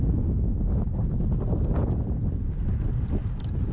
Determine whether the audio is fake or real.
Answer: real